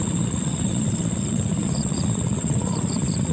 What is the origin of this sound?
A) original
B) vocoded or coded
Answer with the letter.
B